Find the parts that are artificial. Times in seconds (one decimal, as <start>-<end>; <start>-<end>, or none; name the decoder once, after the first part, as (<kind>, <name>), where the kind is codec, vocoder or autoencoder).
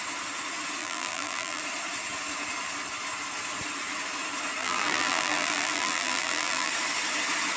0.8-1.6 (vocoder, BigVGAN v2); 4.6-6.7